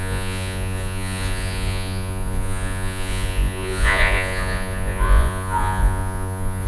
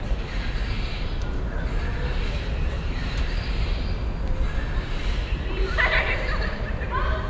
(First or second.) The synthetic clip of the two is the first